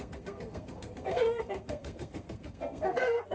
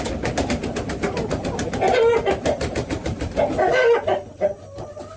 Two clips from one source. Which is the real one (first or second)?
second